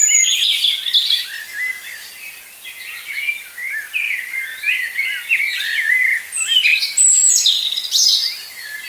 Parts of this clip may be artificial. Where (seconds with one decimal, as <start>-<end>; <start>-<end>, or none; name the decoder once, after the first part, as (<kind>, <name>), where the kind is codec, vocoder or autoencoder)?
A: none